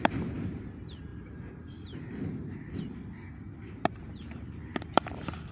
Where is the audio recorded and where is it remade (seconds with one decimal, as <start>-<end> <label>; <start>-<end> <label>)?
0.0-5.5 remade